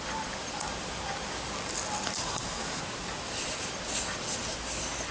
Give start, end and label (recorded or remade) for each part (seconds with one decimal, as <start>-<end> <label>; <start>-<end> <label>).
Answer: 0.0-2.2 recorded; 2.2-2.8 remade; 2.8-5.1 recorded